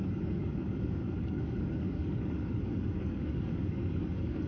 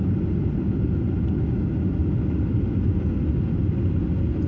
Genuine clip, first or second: second